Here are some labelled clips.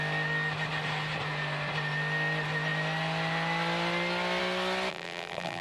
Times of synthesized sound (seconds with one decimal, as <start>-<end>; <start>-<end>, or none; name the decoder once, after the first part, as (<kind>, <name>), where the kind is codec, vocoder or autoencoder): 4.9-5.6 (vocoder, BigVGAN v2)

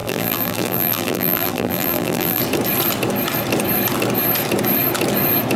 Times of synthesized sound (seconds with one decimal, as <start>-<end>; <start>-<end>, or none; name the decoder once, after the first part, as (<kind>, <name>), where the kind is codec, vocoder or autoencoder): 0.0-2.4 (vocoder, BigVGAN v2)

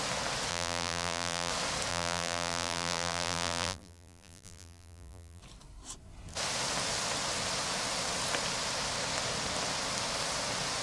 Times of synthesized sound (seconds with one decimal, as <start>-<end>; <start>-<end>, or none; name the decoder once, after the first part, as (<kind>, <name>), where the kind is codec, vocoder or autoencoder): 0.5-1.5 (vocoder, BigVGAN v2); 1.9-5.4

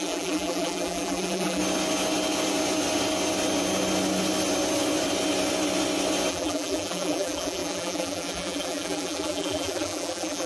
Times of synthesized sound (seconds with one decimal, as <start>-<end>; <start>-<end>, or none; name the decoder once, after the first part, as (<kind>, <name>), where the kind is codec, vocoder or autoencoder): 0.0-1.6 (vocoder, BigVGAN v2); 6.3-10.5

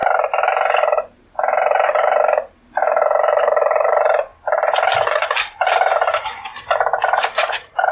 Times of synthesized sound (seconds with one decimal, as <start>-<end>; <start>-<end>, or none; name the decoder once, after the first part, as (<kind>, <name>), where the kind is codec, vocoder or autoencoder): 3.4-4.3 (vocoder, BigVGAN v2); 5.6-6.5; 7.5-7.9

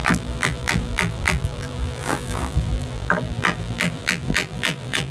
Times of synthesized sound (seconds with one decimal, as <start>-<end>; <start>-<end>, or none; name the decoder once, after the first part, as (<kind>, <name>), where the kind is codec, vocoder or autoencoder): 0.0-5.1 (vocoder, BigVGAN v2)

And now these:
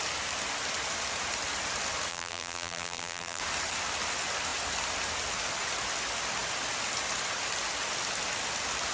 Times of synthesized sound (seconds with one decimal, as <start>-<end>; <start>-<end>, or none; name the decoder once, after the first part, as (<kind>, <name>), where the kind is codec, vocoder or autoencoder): 2.1-3.4 (vocoder, BigVGAN v2)

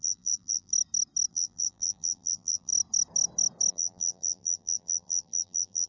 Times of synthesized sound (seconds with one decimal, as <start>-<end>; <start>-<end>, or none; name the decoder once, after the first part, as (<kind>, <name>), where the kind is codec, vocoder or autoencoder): 0.0-0.7 (vocoder, BigVGAN v2); 1.3-2.7; 3.7-5.9